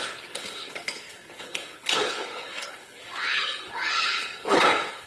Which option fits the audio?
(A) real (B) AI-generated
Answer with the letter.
B